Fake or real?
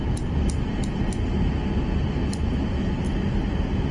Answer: real